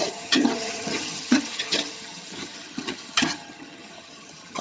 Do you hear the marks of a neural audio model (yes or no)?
yes